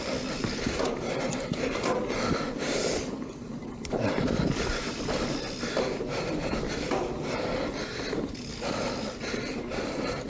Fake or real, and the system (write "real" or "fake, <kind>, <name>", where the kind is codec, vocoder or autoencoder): real